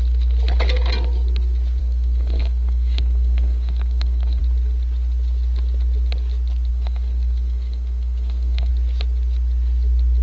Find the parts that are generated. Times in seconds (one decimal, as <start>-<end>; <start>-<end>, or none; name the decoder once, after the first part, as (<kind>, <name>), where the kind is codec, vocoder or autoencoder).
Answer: 1.8-4.4 (codec, SNAC); 6.7-8.7